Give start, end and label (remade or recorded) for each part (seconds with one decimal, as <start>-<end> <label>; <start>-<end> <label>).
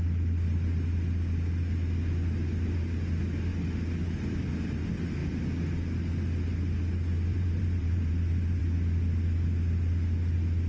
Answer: 0.0-7.3 recorded; 7.3-8.6 remade; 8.6-10.7 recorded